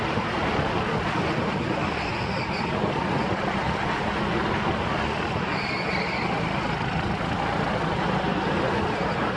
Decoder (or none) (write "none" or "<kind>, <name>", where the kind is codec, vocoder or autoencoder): none